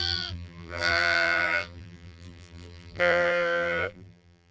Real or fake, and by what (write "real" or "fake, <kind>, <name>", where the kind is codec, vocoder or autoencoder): fake, vocoder, BigVGAN v2